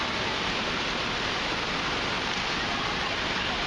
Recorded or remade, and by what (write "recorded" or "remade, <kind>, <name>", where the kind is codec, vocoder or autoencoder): recorded